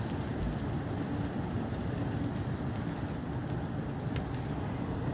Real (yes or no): yes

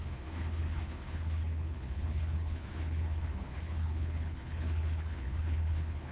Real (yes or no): no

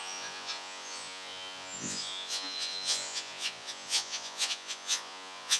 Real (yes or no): no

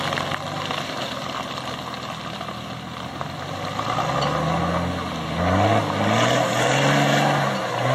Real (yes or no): yes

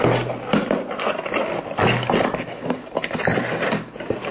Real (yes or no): yes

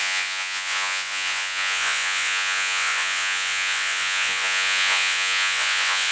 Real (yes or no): no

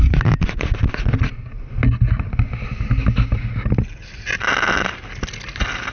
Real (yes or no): yes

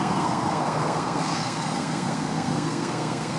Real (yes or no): no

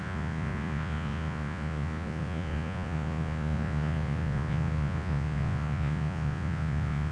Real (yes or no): no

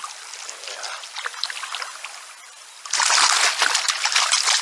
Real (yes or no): yes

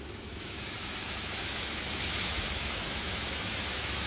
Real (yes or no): no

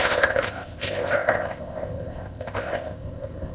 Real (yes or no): no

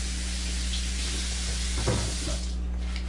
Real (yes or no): yes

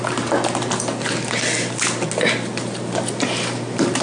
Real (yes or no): yes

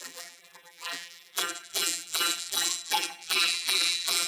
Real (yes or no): no